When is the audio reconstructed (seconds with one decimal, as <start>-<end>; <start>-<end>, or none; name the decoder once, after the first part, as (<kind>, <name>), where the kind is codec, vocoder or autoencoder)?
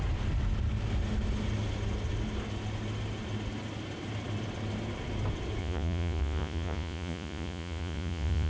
5.6-8.5 (vocoder, Vocos)